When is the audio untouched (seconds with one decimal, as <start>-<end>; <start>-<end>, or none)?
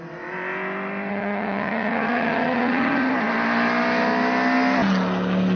0.0-1.1; 3.1-5.6